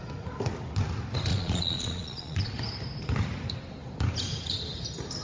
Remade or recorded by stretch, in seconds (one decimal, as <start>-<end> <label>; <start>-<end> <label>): 0.0-1.3 recorded; 1.3-2.5 remade; 2.5-5.2 recorded